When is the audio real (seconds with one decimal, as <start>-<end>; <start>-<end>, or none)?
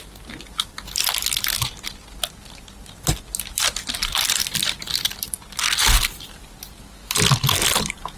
0.0-8.2